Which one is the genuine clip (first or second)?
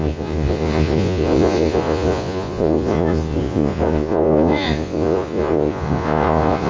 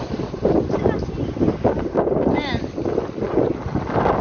second